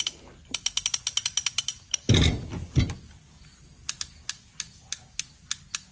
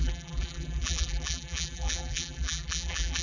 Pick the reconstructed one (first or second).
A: second